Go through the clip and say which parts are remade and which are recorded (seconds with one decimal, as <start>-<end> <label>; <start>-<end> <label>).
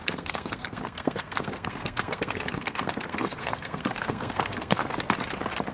0.0-4.8 remade; 4.8-5.7 recorded